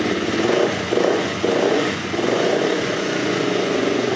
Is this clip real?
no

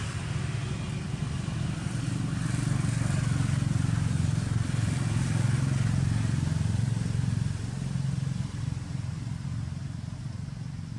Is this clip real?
yes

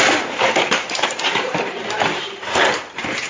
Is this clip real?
no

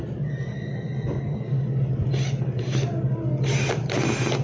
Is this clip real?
yes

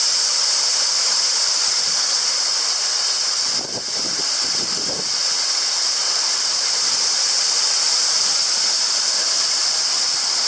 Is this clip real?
no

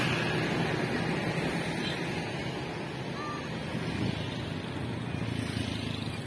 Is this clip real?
yes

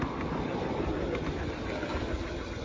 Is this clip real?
yes